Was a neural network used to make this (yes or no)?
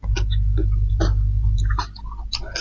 no